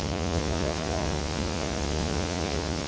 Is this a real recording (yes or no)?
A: no